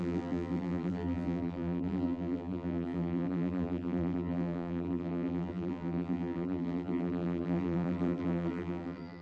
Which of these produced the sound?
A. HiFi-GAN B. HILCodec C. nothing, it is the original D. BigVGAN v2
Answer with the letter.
D